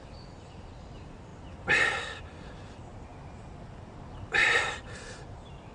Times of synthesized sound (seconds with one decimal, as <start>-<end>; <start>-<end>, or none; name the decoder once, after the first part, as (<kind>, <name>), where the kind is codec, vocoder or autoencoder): none